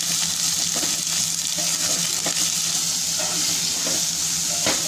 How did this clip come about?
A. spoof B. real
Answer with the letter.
B